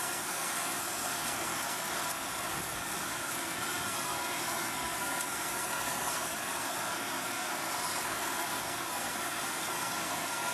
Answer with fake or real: fake